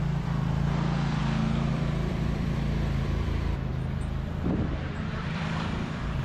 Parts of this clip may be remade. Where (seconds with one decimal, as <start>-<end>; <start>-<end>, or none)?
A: 0.0-1.2; 1.7-3.7; 4.7-6.2